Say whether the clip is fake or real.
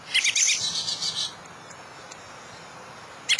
real